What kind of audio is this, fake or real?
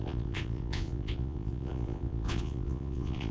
fake